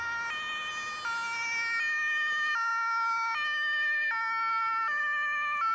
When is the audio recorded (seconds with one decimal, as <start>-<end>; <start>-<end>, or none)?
0.0-5.7